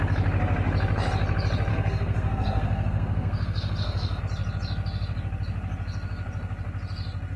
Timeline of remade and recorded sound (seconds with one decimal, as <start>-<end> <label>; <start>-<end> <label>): 0.0-1.7 recorded; 1.7-4.2 remade; 4.2-7.4 recorded